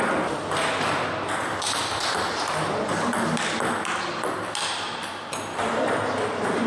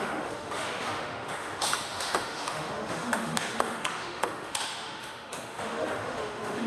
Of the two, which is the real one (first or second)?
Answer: first